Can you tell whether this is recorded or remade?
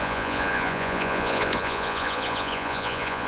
remade